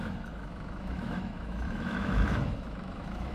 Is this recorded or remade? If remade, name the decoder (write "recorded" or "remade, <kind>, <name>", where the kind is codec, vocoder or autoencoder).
remade, autoencoder, DAC-VAE